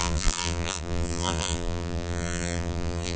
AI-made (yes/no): yes